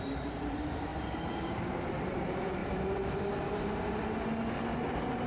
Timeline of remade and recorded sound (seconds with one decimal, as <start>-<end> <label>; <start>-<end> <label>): 0.0-2.6 remade; 2.6-4.8 recorded; 4.8-5.3 remade